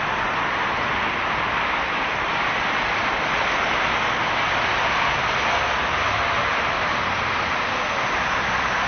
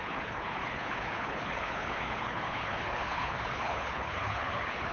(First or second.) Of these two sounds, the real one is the first